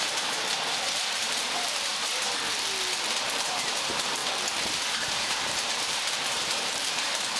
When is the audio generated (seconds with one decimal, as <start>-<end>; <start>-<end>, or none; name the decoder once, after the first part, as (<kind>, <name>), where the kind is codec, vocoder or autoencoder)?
0.0-1.9 (vocoder, BigVGAN v2); 3.2-4.2; 4.9-7.4